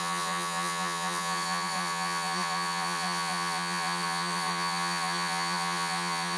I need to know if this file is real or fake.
fake